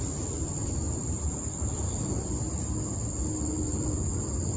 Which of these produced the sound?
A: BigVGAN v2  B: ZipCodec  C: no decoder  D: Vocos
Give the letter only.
C